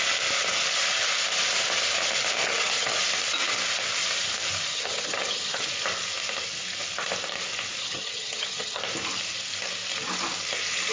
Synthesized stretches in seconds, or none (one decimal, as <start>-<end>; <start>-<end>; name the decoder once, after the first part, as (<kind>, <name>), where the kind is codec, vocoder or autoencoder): 2.4-3.0 (vocoder, HiFi-GAN); 4.7-5.6; 7.8-8.8